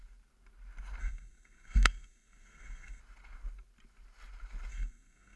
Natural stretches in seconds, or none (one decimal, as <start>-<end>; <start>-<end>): 0.0-1.0; 3.0-4.7